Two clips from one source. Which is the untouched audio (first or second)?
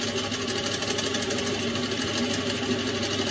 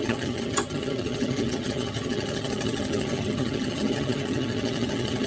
first